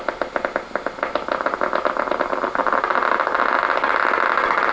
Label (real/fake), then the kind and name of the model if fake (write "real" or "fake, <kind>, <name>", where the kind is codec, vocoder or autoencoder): real